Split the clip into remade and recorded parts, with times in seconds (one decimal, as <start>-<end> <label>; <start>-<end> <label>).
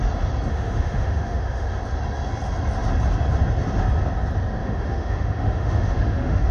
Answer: 0.0-0.5 recorded; 0.5-1.8 remade; 1.8-4.6 recorded; 4.6-6.5 remade